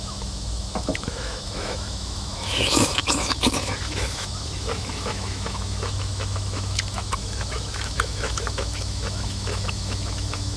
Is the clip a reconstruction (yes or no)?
yes